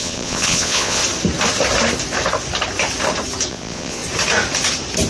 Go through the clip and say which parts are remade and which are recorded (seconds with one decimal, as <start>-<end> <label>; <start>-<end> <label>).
0.0-1.0 remade; 1.0-3.5 recorded; 3.5-4.0 remade; 4.0-5.1 recorded